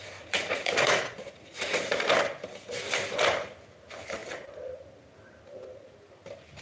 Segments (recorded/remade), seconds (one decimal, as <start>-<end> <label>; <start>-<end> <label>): 0.0-2.0 remade; 2.0-6.6 recorded